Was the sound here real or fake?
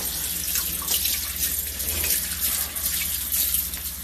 real